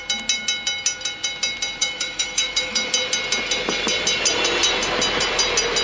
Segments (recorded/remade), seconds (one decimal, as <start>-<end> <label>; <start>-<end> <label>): 0.0-1.8 recorded; 1.8-2.9 remade; 2.9-5.8 recorded